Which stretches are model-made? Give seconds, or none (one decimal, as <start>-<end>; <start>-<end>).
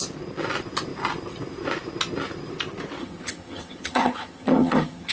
3.0-5.1